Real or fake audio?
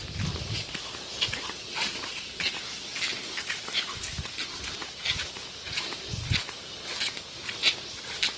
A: real